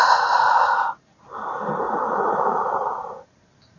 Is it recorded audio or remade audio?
recorded